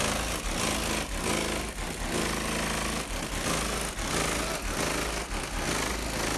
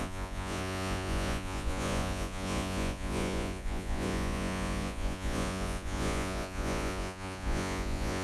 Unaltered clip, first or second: first